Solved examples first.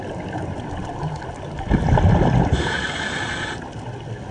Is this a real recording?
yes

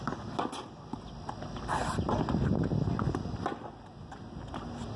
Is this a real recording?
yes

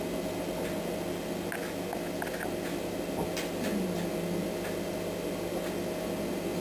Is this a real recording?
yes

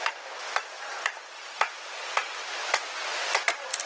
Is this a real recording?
no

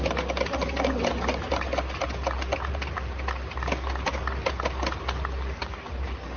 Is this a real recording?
yes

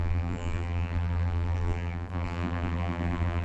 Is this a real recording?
no